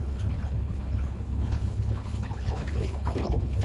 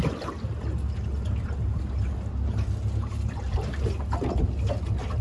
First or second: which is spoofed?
first